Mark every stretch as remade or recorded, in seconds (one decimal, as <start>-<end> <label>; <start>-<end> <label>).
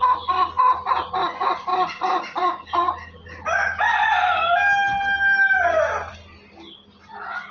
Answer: 0.0-7.5 recorded